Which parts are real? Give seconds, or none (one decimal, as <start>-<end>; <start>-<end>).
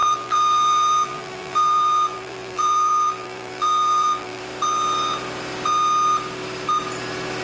4.4-7.4